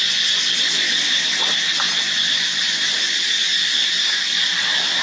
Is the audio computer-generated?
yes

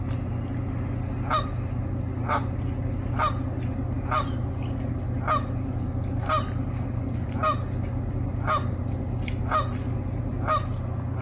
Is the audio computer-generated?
no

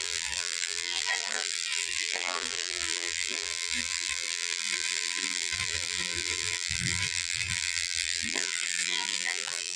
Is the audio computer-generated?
yes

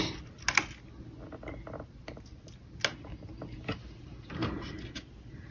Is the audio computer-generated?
no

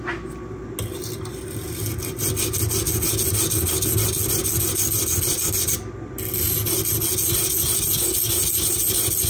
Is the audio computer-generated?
no